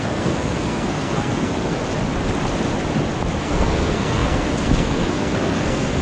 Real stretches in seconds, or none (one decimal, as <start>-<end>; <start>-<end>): 1.8-3.4